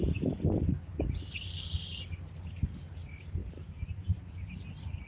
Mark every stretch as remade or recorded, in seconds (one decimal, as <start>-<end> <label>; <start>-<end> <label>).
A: 0.0-3.4 recorded; 3.4-4.5 remade; 4.5-5.1 recorded